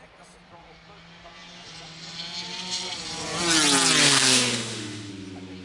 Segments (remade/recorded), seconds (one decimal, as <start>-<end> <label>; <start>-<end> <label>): 0.0-4.0 recorded; 4.0-5.1 remade; 5.1-5.6 recorded